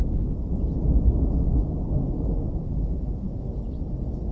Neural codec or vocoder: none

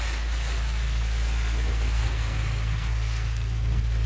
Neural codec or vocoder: codec, SNAC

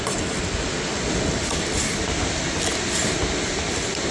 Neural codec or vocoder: none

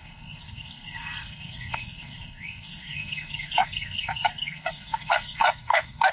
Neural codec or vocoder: codec, SNAC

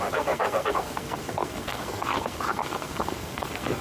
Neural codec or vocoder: codec, SNAC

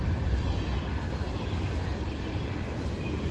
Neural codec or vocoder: none